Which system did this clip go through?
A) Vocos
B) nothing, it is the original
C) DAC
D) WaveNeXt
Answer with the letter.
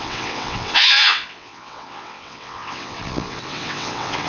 D